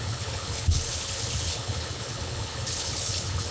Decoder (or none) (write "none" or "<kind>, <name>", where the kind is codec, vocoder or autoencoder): codec, HILCodec